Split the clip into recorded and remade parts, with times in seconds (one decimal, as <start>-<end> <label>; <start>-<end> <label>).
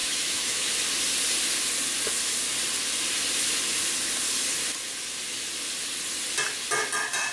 0.0-0.7 remade; 0.7-7.3 recorded